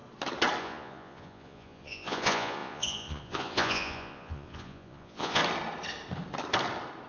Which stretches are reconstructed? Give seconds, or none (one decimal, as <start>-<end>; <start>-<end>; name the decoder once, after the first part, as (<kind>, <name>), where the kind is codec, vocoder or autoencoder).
0.6-5.4 (vocoder, Vocos)